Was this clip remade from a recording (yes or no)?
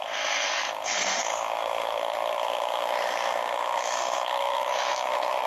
yes